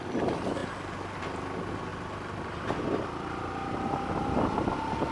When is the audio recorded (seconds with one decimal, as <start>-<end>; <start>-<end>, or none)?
0.0-5.1